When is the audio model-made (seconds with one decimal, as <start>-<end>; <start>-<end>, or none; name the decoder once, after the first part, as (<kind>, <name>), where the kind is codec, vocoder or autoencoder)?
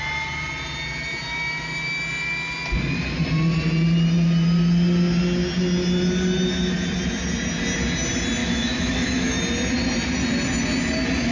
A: 8.4-9.4 (autoencoder, DAC-VAE)